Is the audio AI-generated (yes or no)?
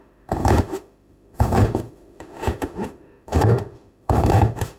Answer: yes